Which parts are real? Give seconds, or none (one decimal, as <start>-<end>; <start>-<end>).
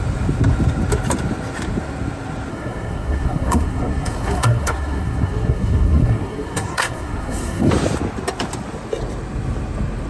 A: 0.0-2.5; 7.7-10.1